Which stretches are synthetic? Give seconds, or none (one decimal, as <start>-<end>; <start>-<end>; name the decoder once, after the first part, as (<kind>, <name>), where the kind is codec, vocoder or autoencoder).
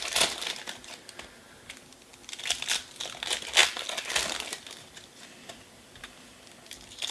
3.6-6.0 (vocoder, BigVGAN v2)